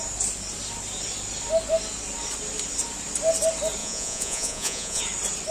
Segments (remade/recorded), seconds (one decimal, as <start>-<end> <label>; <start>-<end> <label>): 0.0-3.8 recorded; 3.8-5.0 remade; 5.0-5.5 recorded